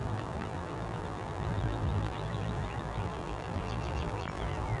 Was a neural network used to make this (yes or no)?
yes